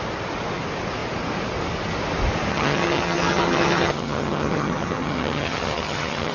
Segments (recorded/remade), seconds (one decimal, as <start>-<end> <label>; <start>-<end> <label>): 0.0-2.5 recorded; 2.5-6.3 remade